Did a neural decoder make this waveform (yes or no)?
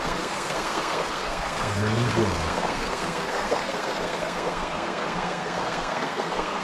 yes